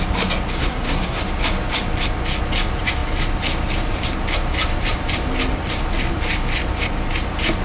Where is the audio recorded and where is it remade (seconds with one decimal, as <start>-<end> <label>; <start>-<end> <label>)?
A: 0.0-0.6 recorded; 0.6-1.2 remade; 1.2-7.6 recorded